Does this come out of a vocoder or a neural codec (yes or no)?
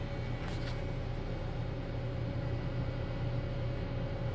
no